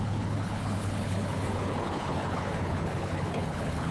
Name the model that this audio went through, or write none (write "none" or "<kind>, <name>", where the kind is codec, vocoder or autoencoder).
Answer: codec, HILCodec